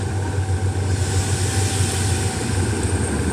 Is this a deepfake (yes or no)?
no